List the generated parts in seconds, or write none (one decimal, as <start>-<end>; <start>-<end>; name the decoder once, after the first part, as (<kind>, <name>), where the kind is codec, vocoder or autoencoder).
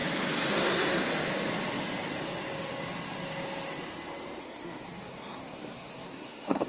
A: 0.5-1.0 (codec, SNAC); 4.4-6.7